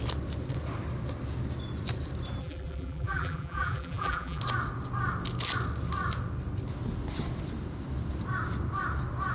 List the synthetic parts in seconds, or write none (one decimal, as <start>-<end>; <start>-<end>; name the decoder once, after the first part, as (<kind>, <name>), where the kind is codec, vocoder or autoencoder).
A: 2.4-4.4 (vocoder, BigVGAN v2)